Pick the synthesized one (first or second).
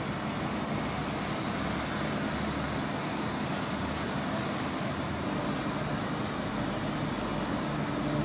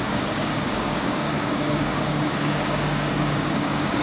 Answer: second